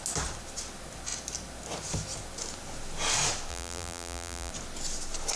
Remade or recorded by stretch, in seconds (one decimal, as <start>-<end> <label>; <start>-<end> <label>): 0.0-3.5 recorded; 3.5-4.5 remade; 4.5-5.4 recorded